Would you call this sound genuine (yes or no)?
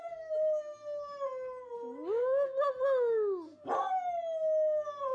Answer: yes